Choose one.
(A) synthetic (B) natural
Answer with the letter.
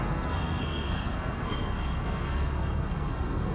A